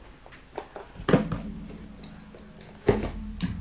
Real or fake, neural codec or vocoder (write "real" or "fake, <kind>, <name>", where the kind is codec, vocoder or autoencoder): real